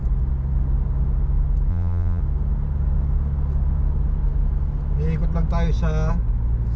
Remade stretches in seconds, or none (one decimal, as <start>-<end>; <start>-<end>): 1.7-2.2